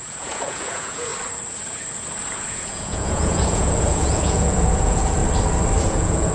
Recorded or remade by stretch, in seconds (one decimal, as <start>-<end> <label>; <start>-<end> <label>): 0.0-1.1 remade; 1.1-2.5 recorded; 2.5-5.2 remade; 5.2-5.8 recorded; 5.8-6.3 remade